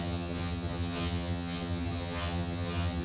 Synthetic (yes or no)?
yes